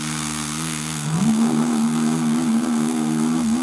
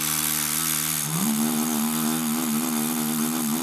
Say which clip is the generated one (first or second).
first